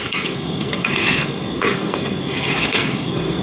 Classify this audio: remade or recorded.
remade